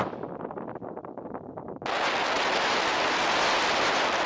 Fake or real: real